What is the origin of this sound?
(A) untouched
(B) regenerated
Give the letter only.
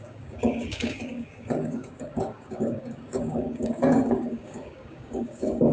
B